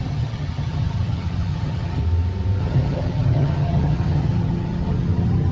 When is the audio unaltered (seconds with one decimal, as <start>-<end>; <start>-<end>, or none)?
2.0-2.6